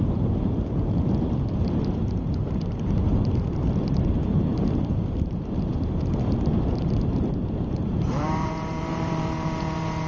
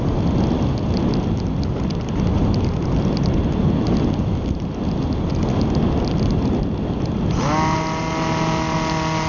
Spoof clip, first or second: first